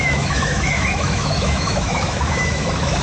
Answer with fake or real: fake